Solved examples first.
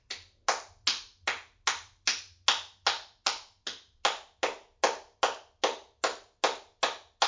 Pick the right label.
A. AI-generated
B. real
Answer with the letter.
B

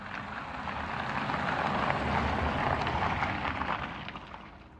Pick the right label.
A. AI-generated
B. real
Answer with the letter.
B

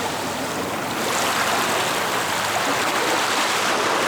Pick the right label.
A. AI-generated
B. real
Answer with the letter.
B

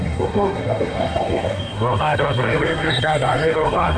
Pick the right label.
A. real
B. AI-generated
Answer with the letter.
B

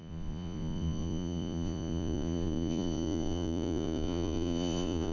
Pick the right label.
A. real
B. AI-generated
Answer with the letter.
B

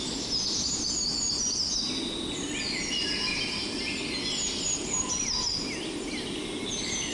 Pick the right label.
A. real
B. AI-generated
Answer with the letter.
A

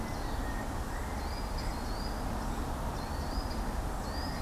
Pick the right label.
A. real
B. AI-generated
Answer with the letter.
A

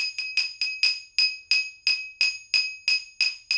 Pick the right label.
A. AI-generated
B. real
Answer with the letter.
B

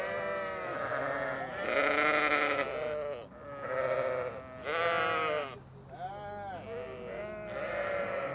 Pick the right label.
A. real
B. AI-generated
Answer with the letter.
A